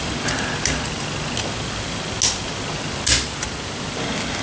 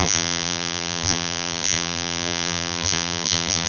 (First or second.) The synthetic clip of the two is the second